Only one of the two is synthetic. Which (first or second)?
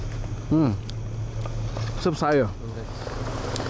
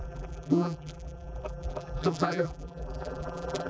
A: second